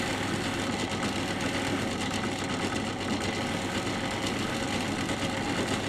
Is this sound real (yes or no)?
yes